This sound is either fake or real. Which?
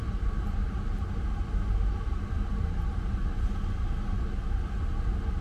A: real